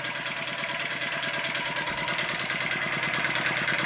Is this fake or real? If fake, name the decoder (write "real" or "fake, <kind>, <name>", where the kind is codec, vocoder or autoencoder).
real